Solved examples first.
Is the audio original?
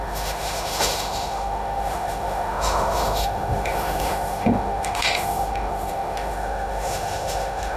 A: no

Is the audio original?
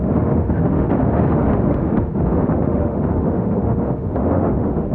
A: no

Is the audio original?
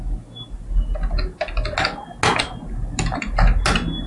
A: yes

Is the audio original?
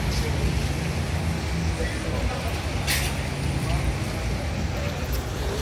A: yes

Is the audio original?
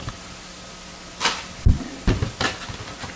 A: yes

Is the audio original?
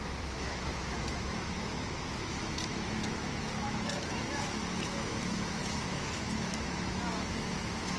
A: no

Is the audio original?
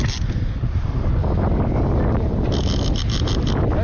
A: yes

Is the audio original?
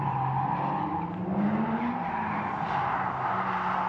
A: yes